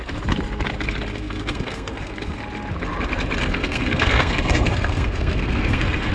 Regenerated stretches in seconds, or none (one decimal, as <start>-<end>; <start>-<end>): 1.1-2.4; 3.4-6.1